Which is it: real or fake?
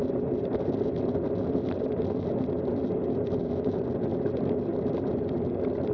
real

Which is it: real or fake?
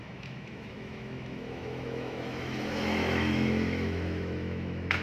fake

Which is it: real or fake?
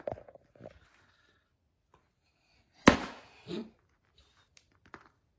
real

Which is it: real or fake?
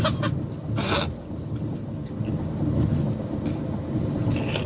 real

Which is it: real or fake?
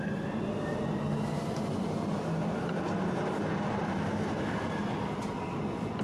real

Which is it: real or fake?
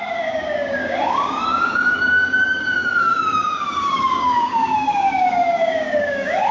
fake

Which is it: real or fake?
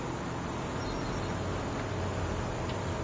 real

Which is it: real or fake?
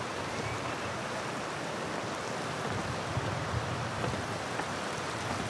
real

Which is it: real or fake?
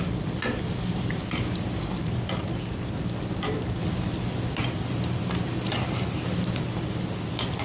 real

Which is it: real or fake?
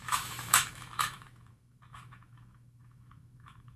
fake